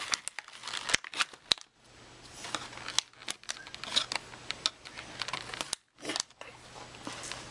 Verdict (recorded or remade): recorded